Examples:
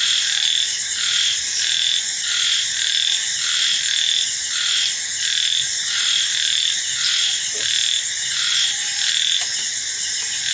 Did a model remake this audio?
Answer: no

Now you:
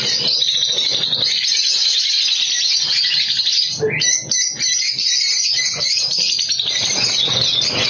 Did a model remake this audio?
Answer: no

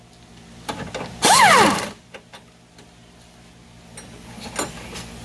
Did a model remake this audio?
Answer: no